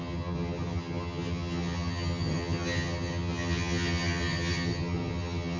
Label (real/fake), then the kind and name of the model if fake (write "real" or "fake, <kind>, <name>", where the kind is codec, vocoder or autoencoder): fake, vocoder, HiFi-GAN